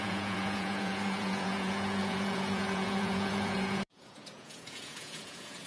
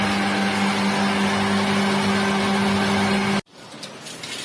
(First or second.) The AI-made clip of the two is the first